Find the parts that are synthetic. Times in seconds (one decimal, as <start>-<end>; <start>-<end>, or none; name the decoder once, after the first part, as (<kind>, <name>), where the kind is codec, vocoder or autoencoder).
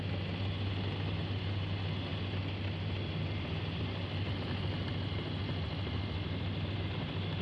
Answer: none